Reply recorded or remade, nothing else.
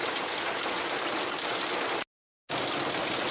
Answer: recorded